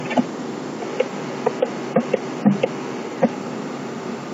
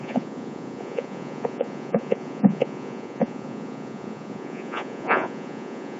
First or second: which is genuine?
first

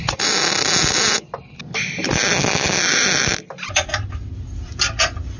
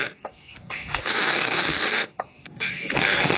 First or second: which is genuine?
first